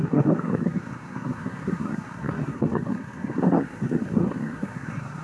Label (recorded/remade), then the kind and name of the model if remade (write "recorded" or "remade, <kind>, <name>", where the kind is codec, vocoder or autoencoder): remade, codec, SNAC